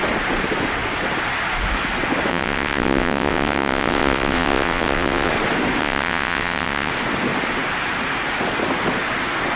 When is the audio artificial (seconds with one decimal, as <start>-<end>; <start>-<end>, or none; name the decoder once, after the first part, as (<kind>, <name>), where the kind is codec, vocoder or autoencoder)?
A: 2.3-5.3 (vocoder, WaveNeXt); 5.8-6.9